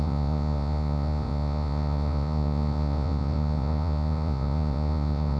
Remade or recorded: remade